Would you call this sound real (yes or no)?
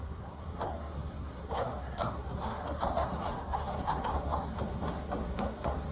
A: no